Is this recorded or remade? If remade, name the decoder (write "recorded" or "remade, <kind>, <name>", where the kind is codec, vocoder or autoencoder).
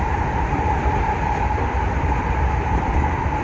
remade, vocoder, BigVGAN v2